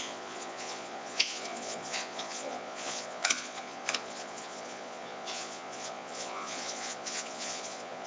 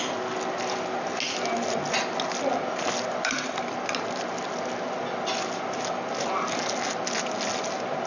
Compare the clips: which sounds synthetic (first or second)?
first